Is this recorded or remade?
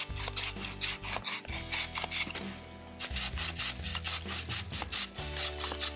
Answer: recorded